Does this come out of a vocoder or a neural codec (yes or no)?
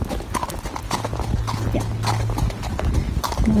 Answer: no